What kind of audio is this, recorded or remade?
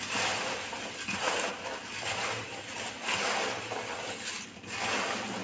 recorded